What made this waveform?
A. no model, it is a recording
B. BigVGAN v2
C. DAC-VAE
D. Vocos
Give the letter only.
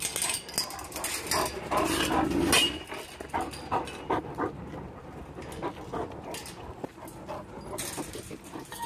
A